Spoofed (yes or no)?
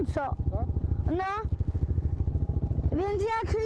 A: no